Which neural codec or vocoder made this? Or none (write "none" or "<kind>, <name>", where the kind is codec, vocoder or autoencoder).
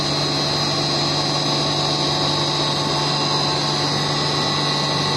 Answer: none